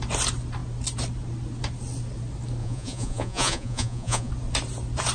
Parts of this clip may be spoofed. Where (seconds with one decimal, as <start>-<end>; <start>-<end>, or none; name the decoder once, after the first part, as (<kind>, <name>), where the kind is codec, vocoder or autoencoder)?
2.6-4.3 (vocoder, Vocos)